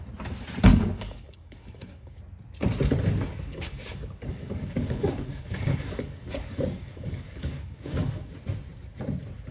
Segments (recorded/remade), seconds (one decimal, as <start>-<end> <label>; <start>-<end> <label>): 0.0-0.7 recorded; 0.7-2.2 remade; 2.2-3.3 recorded; 3.3-8.3 remade; 8.3-9.5 recorded

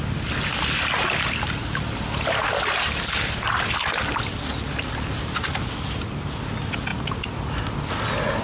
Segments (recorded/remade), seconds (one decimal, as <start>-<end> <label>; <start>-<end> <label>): 0.0-8.4 recorded

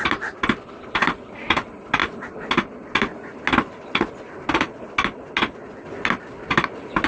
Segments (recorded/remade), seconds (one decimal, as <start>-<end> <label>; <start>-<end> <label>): 0.0-7.1 recorded

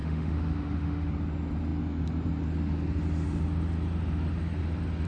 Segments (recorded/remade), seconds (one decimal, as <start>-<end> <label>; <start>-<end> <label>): 0.0-1.1 remade; 1.1-5.1 recorded

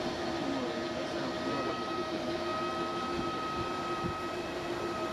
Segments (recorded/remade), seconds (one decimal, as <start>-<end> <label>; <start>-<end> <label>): 0.0-0.4 remade; 0.4-1.7 recorded; 1.7-2.5 remade; 2.5-3.2 recorded; 3.2-5.1 remade

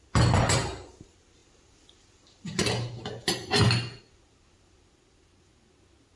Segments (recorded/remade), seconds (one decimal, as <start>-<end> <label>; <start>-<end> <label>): 0.0-6.2 recorded